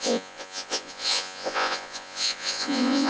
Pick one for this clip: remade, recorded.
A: remade